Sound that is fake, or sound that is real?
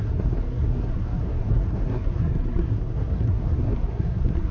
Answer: fake